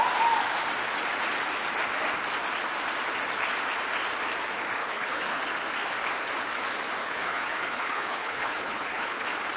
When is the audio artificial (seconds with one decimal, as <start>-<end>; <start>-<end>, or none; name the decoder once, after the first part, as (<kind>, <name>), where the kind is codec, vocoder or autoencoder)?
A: 4.8-5.4 (codec, HILCodec); 7.0-9.2